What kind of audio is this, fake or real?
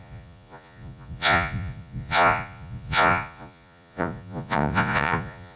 fake